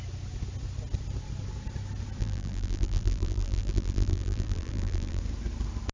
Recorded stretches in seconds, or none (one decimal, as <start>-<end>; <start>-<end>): 0.0-2.2; 5.2-5.9